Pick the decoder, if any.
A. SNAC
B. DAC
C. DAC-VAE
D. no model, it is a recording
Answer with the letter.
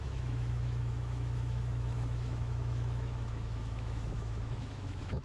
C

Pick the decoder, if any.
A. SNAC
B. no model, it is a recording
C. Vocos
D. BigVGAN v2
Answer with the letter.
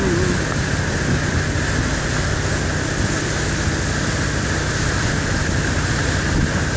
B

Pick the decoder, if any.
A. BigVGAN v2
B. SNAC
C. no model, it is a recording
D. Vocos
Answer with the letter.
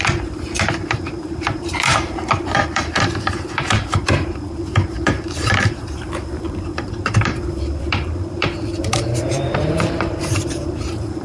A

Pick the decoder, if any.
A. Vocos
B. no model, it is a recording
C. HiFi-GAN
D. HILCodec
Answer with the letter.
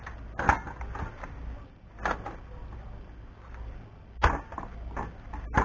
B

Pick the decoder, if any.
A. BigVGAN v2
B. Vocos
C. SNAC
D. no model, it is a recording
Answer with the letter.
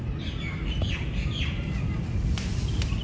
A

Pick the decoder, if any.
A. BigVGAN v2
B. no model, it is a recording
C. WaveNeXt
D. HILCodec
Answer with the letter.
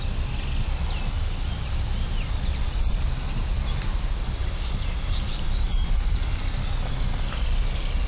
B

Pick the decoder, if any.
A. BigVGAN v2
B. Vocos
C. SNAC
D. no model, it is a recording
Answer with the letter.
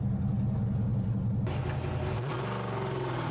D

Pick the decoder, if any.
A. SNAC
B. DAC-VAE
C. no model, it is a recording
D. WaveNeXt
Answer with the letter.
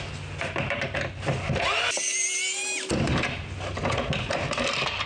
C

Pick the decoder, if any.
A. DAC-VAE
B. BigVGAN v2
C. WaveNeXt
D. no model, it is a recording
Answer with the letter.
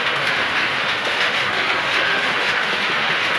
A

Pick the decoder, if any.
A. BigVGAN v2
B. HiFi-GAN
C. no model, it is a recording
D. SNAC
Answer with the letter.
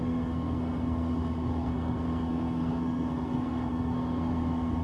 D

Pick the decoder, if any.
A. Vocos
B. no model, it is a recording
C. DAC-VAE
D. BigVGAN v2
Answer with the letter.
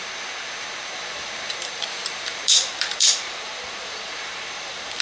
D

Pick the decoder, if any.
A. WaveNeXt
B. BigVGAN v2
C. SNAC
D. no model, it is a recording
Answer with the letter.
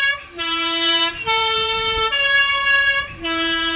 B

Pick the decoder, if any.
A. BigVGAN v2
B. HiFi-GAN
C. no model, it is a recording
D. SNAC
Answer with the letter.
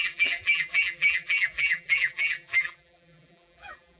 A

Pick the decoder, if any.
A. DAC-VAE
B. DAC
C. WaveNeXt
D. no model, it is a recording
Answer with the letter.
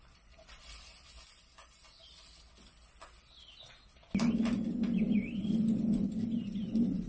D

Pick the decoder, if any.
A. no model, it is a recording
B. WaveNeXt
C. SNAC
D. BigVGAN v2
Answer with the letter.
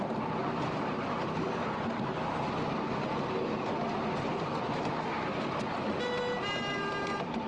A